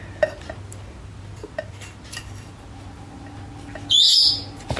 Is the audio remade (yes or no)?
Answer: no